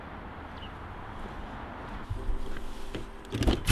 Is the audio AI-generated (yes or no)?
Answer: no